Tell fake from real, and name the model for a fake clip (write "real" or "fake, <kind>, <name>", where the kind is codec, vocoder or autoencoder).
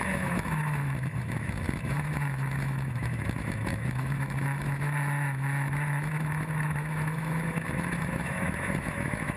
fake, autoencoder, DAC-VAE